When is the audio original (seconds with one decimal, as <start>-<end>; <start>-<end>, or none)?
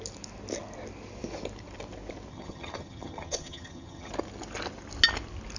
0.0-2.3; 4.1-5.6